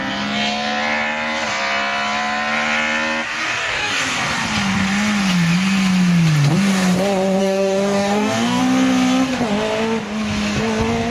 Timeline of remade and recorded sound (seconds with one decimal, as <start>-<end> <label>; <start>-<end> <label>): 0.0-3.4 recorded; 3.4-4.0 remade; 4.0-7.4 recorded; 7.4-8.6 remade; 8.6-11.1 recorded